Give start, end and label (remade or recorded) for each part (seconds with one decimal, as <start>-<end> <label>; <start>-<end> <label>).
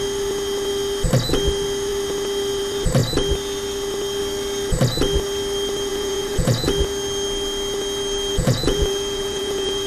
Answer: 0.0-5.9 recorded; 5.9-6.7 remade; 6.7-8.3 recorded; 8.3-9.9 remade